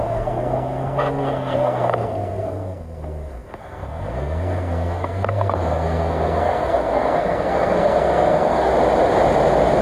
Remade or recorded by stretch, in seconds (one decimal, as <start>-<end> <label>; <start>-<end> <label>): 0.0-8.7 remade; 8.7-9.8 recorded